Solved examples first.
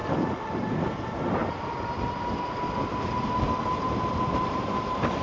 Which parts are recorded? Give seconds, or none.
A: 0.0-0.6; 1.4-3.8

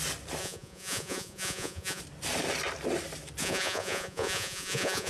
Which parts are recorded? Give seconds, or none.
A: 0.0-0.4; 2.0-3.4